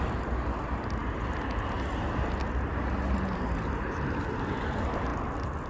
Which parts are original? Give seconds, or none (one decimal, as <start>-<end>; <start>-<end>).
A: 0.0-5.7